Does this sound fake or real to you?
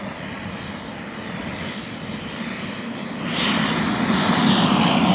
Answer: real